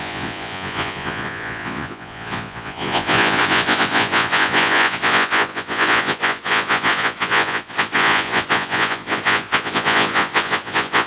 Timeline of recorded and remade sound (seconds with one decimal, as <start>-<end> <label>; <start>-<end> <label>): 0.0-11.1 remade

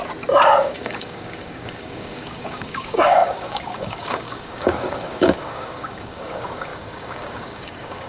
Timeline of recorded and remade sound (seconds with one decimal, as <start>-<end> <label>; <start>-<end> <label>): 0.0-0.6 recorded; 0.6-8.1 remade

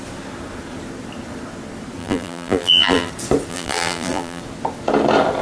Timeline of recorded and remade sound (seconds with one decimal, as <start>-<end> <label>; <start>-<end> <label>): 0.0-2.0 recorded; 2.0-3.1 remade; 3.1-3.5 recorded; 3.5-4.4 remade; 4.4-5.4 recorded

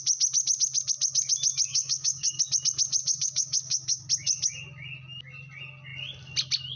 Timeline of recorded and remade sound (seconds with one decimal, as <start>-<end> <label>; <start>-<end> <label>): 0.0-1.7 recorded; 1.7-2.4 remade; 2.4-3.0 recorded; 3.0-4.0 remade; 4.0-6.8 recorded

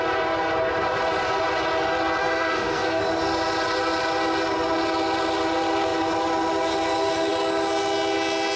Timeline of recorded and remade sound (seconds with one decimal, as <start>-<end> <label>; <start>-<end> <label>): 0.0-2.2 recorded; 2.2-3.0 remade; 3.0-8.6 recorded